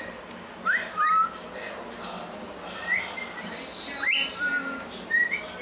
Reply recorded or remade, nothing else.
recorded